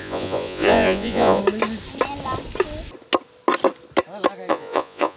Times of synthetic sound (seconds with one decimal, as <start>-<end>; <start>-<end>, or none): 0.0-1.4; 4.5-5.2